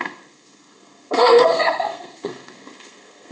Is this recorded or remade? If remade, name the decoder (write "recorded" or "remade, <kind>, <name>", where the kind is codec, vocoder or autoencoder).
remade, codec, SNAC